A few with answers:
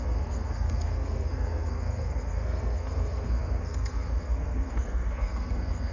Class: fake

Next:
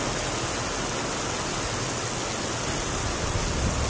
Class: real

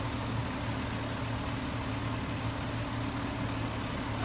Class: real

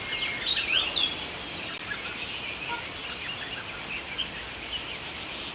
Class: real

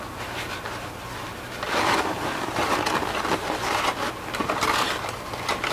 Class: real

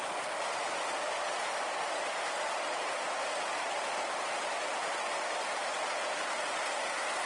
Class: real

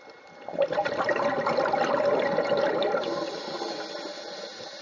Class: real